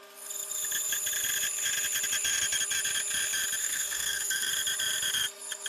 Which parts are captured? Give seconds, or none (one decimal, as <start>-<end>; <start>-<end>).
0.0-3.6; 4.5-5.7